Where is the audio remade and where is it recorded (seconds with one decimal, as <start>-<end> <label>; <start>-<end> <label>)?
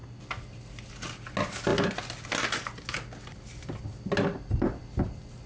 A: 0.0-5.5 recorded